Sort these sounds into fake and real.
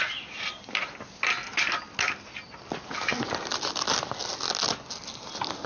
real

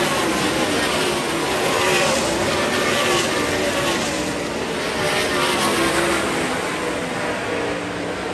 real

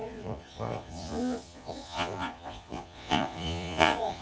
fake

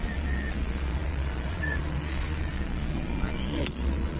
fake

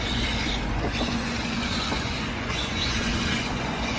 fake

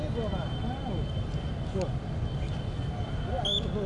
real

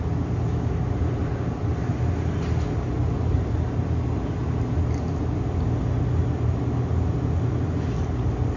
real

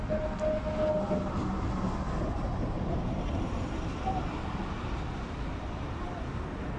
real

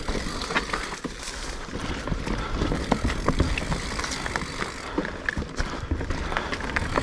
real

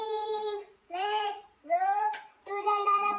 fake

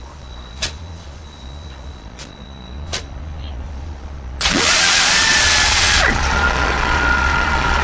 fake